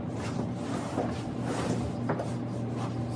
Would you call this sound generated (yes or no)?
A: no